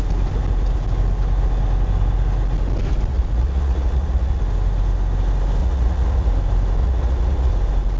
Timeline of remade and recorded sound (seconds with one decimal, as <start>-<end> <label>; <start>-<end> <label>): 0.0-3.1 recorded; 3.1-4.4 remade; 4.4-5.6 recorded; 5.6-6.3 remade; 6.3-6.8 recorded; 6.8-7.5 remade; 7.5-8.0 recorded